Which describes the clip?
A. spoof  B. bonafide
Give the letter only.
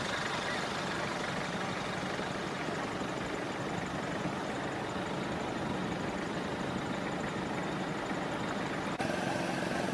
B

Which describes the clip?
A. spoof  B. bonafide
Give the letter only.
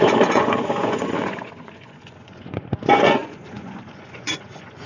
A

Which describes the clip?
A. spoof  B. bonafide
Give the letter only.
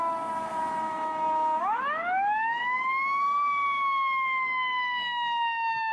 A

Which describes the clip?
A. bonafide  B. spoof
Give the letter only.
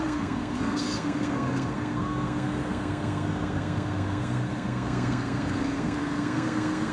B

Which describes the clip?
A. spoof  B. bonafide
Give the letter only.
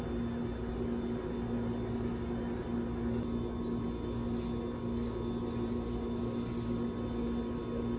B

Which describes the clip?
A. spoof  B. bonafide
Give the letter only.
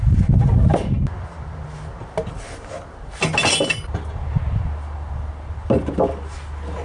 B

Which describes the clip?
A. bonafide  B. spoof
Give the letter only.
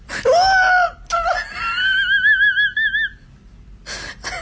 A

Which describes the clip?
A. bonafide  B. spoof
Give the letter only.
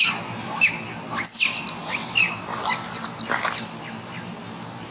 A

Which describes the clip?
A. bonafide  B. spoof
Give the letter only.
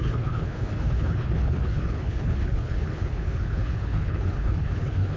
B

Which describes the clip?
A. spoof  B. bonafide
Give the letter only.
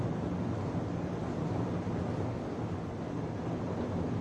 B